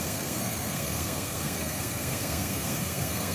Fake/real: fake